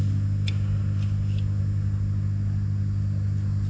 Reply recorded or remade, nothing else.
recorded